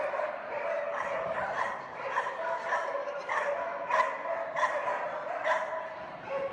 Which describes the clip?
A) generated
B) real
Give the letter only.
B